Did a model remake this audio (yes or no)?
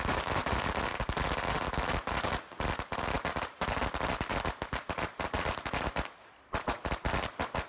no